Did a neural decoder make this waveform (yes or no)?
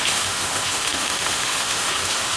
yes